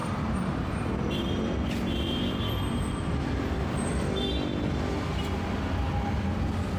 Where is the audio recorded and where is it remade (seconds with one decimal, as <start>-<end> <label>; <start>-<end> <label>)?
0.0-4.1 remade; 4.1-6.8 recorded